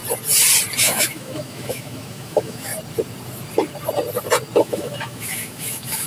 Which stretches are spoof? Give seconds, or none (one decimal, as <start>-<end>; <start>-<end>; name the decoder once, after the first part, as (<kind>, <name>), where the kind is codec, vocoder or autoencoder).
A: 0.8-2.7 (autoencoder, DAC-VAE); 4.6-6.1